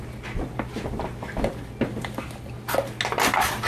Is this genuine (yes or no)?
yes